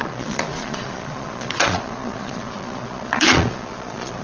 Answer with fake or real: fake